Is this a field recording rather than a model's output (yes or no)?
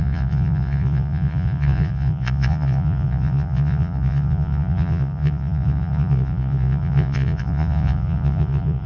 no